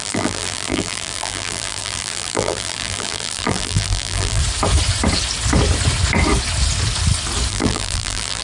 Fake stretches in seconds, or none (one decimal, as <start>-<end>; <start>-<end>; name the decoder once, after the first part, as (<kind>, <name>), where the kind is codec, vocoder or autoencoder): 0.0-4.4 (vocoder, BigVGAN v2); 7.5-8.4